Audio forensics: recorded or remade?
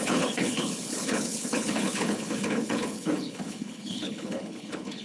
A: remade